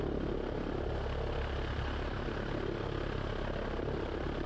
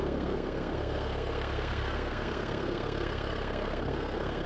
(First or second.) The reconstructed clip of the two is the second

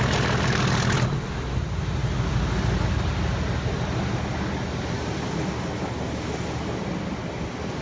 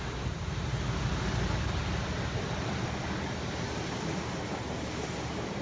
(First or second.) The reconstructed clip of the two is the second